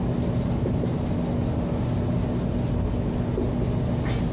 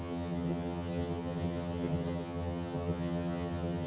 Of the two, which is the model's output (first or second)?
second